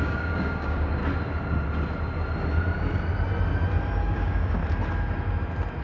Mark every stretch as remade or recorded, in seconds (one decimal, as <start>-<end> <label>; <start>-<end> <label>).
0.0-1.0 remade; 1.0-4.0 recorded; 4.0-4.6 remade; 4.6-5.8 recorded